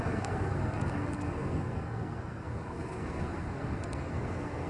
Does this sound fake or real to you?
fake